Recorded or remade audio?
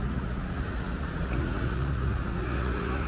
remade